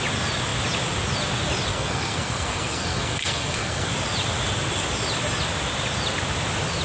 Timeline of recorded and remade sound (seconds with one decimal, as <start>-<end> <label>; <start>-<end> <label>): 0.0-1.7 recorded; 1.7-3.9 remade; 3.9-6.8 recorded